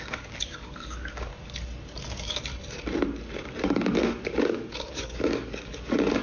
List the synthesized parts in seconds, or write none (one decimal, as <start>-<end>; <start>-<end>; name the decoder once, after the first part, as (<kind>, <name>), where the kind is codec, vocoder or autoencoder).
0.0-1.3 (codec, DAC); 2.1-2.5; 3.6-6.2